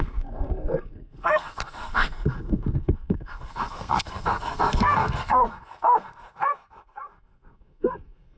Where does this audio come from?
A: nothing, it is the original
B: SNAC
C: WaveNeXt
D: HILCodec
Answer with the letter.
B